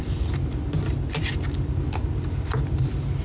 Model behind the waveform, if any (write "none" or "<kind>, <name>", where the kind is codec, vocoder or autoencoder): none